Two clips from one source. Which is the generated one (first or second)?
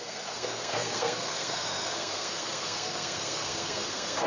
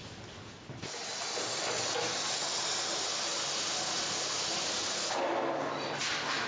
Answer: first